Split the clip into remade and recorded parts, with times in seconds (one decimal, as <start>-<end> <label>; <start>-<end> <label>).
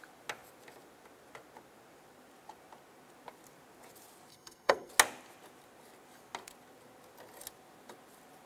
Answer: 0.0-4.3 recorded; 4.3-4.9 remade; 4.9-8.5 recorded